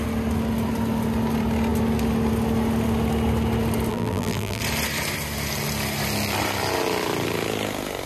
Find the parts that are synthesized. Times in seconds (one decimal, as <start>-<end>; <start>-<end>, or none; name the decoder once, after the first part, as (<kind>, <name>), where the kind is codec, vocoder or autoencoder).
3.9-4.6 (vocoder, BigVGAN v2)